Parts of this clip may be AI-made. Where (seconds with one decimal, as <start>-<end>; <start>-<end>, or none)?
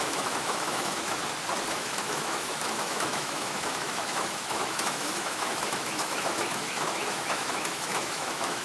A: 0.0-1.2; 1.7-8.6